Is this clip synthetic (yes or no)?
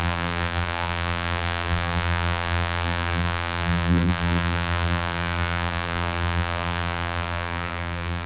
yes